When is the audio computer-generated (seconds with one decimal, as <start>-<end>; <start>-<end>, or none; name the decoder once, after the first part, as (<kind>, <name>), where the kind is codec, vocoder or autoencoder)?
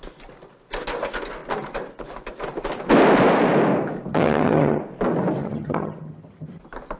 4.1-4.8 (vocoder, HiFi-GAN); 5.4-6.6